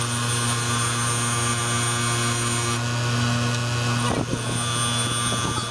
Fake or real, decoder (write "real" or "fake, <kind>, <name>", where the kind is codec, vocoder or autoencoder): real